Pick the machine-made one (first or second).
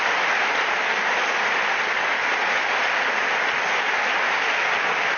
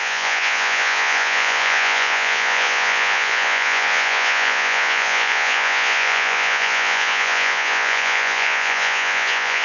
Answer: second